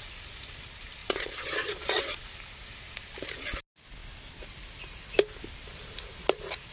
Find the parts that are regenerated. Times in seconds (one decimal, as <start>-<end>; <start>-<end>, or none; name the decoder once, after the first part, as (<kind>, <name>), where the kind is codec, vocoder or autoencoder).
1.0-2.2 (vocoder, Vocos)